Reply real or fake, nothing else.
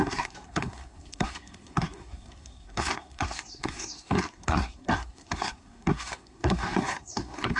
fake